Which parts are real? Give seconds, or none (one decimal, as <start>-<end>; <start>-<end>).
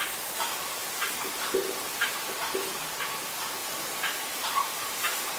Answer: 0.0-0.8; 2.9-3.6